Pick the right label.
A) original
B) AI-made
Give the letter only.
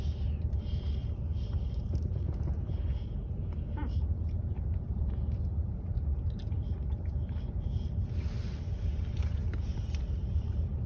B